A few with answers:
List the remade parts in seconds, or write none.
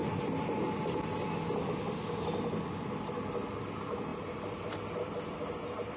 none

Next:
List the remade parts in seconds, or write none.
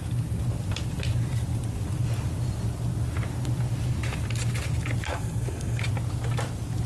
5.1-5.8 (codec, SNAC)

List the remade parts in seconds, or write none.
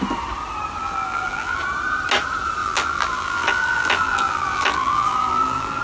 0.8-1.6 (vocoder, BigVGAN v2); 2.6-5.8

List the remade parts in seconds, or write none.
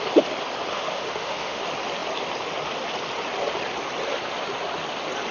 0.7-1.6 (autoencoder, DAC-VAE)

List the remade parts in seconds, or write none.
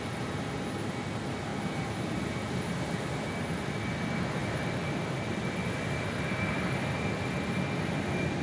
4.4-7.1 (vocoder, BigVGAN v2)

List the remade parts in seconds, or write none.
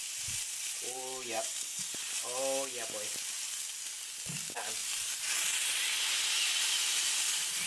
0.0-2.7 (vocoder, BigVGAN v2); 4.8-5.3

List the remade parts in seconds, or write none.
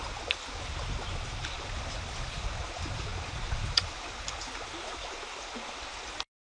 3.1-4.0 (vocoder, BigVGAN v2)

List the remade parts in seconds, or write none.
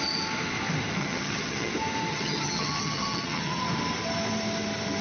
1.0-1.7 (vocoder, HiFi-GAN); 2.1-3.6